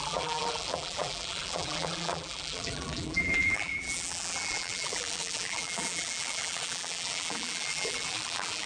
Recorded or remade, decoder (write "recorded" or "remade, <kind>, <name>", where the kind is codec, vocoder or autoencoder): remade, vocoder, BigVGAN v2